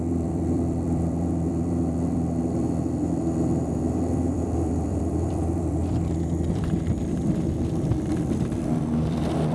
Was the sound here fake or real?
fake